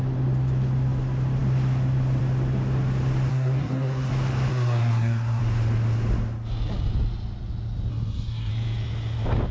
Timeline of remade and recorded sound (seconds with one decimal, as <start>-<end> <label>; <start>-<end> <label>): 0.0-3.3 recorded; 3.3-4.1 remade; 4.1-4.5 recorded; 4.5-5.4 remade; 5.4-7.9 recorded; 7.9-8.5 remade; 8.5-9.5 recorded